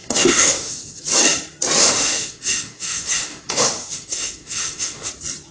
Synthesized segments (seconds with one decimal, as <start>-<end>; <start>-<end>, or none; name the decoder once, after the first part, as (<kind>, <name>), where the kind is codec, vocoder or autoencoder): 0.0-1.0 (autoencoder, DAC-VAE); 1.8-5.1